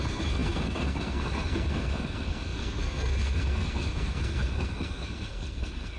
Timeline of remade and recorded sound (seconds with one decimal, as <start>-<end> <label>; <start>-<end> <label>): 0.0-6.0 remade